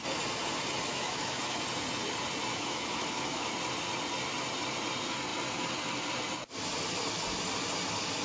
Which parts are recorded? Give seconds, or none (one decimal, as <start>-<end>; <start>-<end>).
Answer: 0.0-0.9; 1.6-2.5; 3.5-8.2